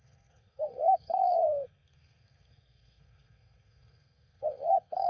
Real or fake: fake